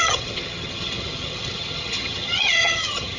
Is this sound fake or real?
fake